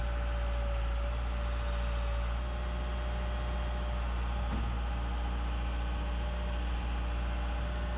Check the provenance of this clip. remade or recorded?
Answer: recorded